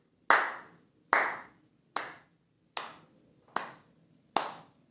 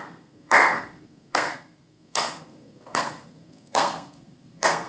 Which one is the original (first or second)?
first